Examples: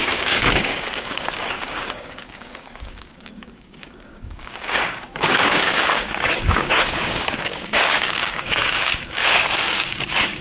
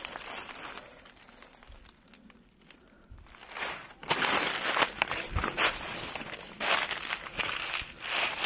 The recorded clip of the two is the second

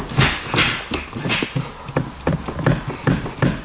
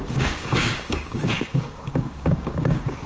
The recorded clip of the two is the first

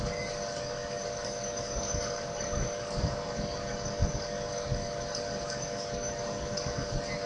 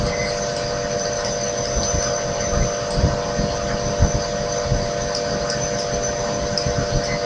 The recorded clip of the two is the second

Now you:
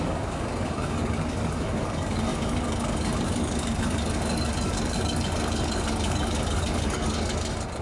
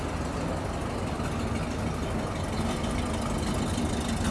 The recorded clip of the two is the second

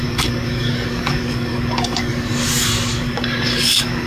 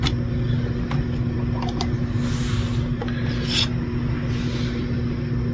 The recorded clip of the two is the second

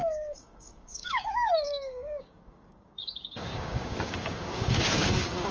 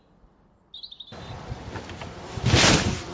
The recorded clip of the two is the second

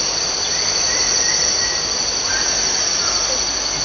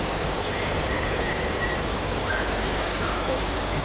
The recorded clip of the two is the first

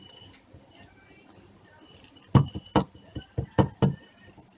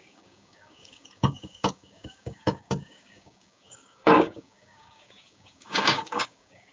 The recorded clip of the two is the first